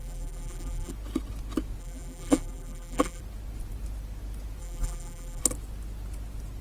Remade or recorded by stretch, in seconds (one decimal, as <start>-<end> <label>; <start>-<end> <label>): 0.0-0.9 remade; 0.9-1.8 recorded; 1.8-3.2 remade; 3.2-4.6 recorded; 4.6-5.4 remade; 5.4-6.6 recorded